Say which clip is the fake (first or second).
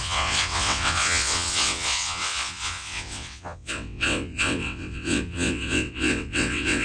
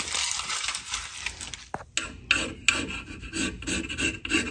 first